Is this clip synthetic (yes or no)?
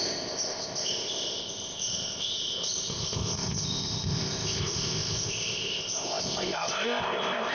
yes